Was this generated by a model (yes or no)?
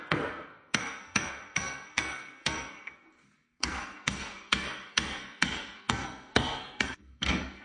yes